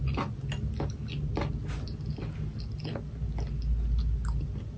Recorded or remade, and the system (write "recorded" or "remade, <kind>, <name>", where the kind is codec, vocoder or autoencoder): recorded